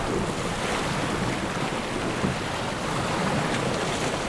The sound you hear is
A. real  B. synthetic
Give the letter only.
A